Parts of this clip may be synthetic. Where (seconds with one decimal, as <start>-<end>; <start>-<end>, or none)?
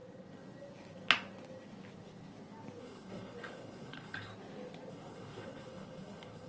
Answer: 2.8-4.3; 4.9-6.5